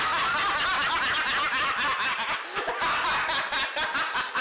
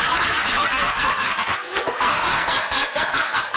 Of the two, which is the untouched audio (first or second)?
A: first